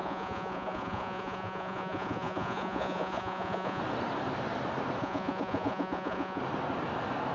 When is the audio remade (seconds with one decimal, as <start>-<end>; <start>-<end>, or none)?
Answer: 0.0-3.8; 5.0-6.4

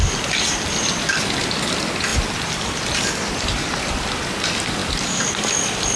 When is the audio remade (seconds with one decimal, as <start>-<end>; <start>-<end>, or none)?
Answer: none